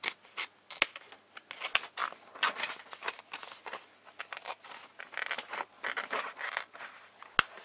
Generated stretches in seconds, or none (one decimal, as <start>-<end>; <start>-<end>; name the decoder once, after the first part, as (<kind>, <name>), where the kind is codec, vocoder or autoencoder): none